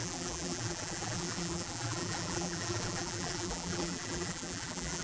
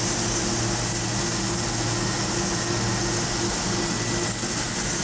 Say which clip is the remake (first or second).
first